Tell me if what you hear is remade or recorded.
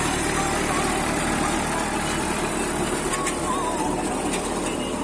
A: remade